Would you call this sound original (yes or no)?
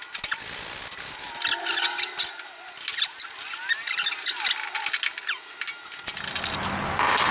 yes